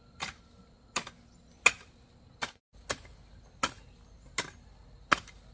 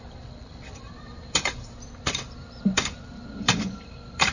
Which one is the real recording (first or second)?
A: first